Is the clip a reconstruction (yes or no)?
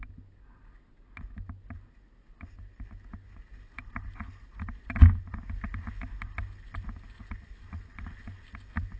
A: no